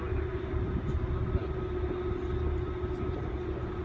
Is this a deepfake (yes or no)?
no